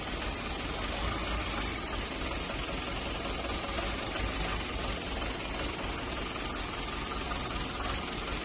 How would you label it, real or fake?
real